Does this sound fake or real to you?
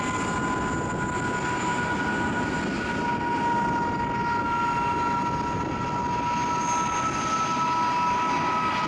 real